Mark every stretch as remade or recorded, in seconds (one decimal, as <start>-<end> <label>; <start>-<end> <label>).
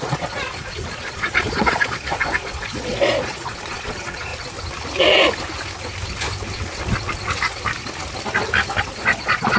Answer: 0.0-4.3 remade; 4.3-8.8 recorded; 8.8-9.6 remade